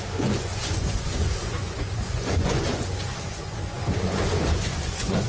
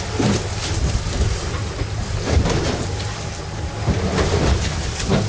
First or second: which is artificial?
first